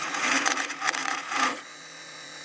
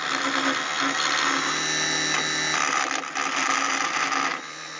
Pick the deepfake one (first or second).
first